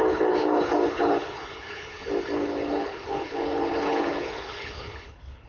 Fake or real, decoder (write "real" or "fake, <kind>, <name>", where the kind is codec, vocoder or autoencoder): fake, codec, HILCodec